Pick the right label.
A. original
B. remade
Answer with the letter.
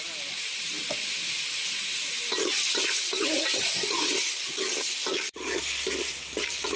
A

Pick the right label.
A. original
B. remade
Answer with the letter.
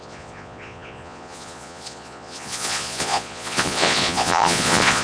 B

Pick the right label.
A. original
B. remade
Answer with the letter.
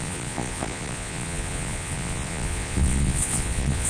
B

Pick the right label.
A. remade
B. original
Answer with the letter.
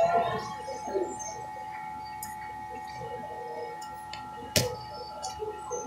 B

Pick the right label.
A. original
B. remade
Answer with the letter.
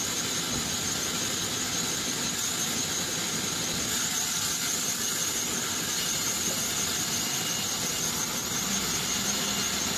A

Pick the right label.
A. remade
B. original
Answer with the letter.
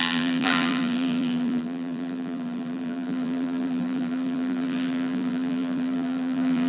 A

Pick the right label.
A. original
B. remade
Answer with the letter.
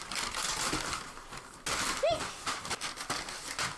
A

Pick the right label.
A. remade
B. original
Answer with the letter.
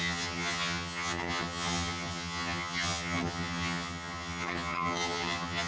A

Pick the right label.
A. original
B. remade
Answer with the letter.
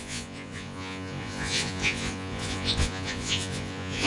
B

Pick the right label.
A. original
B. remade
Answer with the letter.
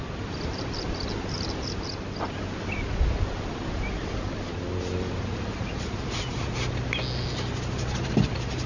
A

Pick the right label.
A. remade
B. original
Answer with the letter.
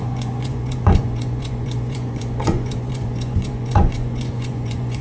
A